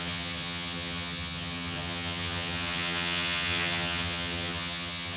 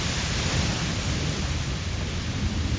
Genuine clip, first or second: second